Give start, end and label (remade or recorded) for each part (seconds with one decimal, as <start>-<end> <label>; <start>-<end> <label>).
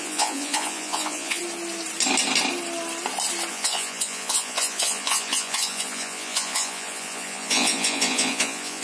0.0-1.4 remade; 1.4-3.5 recorded; 3.5-8.8 remade